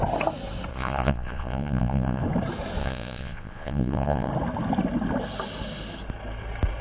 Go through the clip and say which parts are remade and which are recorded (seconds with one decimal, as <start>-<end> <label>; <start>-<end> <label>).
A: 0.0-0.7 recorded; 0.7-2.2 remade; 2.2-2.8 recorded; 2.8-4.3 remade; 4.3-6.8 recorded